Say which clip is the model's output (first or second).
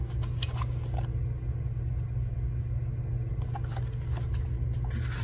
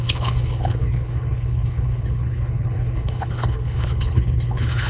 second